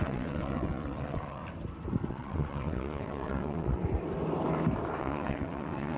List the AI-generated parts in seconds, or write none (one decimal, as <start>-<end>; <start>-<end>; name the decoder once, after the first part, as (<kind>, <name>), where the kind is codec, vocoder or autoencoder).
0.0-1.4 (vocoder, WaveNeXt); 2.1-3.8; 5.0-6.0